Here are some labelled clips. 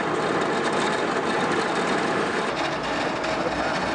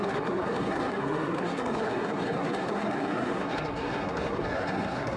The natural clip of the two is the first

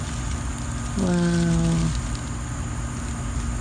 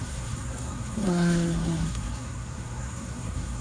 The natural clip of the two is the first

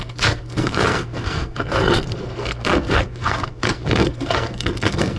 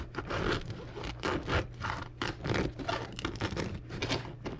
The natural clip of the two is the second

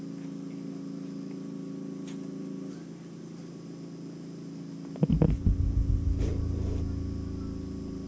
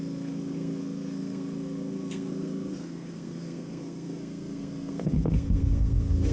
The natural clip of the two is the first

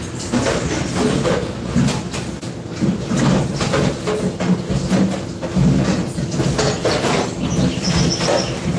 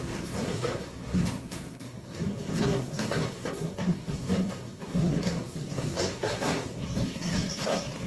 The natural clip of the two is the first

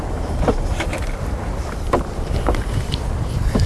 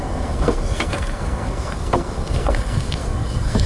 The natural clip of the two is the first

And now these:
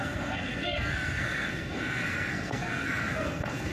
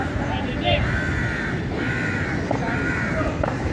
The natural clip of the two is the second